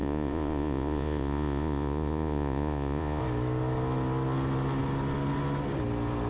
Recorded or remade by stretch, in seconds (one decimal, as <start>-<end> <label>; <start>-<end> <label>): 0.0-3.2 remade; 3.2-6.3 recorded